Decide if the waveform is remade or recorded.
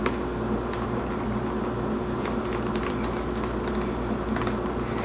recorded